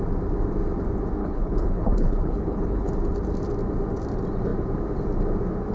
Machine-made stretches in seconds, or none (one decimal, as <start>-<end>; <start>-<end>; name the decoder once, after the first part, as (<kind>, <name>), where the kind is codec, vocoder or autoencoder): 1.2-2.9 (codec, HILCodec)